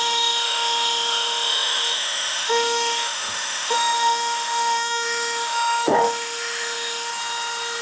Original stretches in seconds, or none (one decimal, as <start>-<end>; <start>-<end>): 7.1-7.8